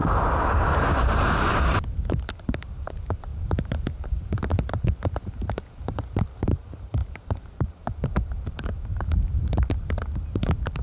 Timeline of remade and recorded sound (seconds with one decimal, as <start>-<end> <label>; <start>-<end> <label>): 0.0-0.7 recorded; 0.7-10.8 remade